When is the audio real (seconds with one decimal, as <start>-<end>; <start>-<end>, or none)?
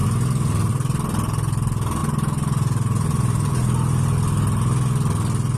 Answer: 0.0-5.6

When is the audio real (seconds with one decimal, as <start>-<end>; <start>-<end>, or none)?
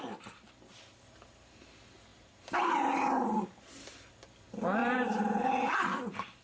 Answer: 0.0-2.1; 4.1-4.8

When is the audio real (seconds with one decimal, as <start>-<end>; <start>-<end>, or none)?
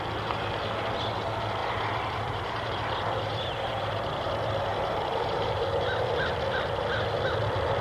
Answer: 0.0-1.6; 4.3-4.7; 5.6-7.8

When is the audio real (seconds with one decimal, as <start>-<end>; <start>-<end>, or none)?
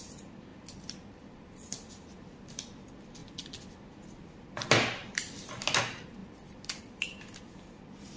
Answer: 0.0-0.5; 1.9-6.2; 6.8-8.2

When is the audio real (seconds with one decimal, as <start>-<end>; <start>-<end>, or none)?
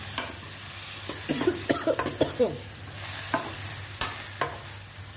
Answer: 0.0-1.3; 4.0-5.2